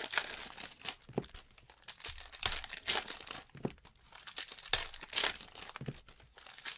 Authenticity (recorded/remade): recorded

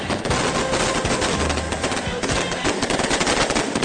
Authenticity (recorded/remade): recorded